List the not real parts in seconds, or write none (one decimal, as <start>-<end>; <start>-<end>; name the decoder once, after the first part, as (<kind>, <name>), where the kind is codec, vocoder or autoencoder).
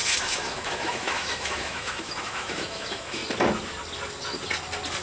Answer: 0.0-3.2 (autoencoder, DAC-VAE)